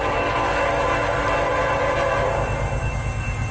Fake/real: real